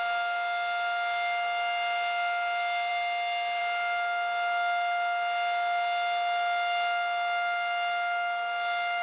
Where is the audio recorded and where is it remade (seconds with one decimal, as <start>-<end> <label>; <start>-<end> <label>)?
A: 0.0-9.0 recorded